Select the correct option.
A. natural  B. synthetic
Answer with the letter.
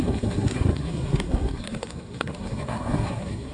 B